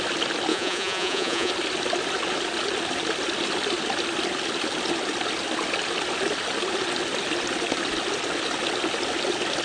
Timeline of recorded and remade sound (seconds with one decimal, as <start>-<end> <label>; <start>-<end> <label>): 0.0-0.5 recorded; 0.5-1.5 remade; 1.5-9.6 recorded